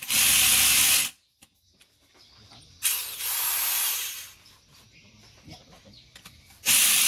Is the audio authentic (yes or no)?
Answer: no